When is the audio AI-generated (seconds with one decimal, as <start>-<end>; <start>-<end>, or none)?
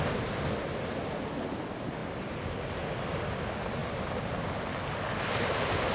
none